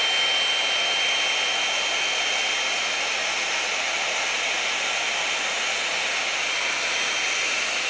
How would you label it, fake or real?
real